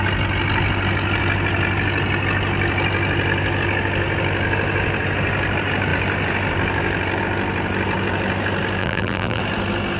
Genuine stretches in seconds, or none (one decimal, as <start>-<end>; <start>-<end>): 0.0-8.8; 9.4-10.0